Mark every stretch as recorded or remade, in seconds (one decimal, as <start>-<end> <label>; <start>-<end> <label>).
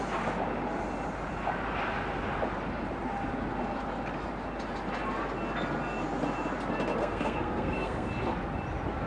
0.0-7.0 recorded; 7.0-8.1 remade; 8.1-9.1 recorded